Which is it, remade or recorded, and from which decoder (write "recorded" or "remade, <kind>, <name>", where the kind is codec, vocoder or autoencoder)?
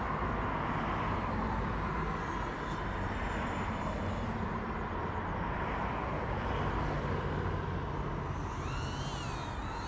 recorded